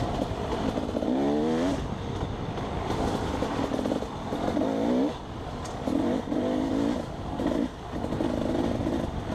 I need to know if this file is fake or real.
real